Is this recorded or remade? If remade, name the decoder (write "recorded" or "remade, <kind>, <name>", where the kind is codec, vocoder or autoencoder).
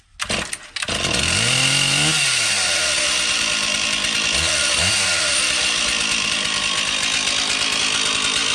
recorded